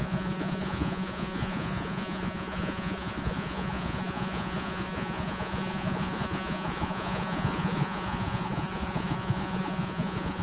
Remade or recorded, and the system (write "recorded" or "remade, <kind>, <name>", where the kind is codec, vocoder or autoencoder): remade, vocoder, Vocos